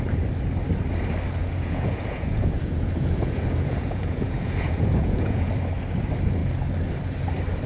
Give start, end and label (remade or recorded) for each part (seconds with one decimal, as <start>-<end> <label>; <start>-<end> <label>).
0.0-1.4 recorded; 1.4-5.5 remade; 5.5-7.7 recorded